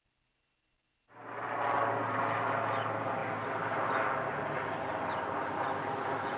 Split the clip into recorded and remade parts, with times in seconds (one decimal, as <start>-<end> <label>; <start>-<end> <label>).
0.0-6.4 recorded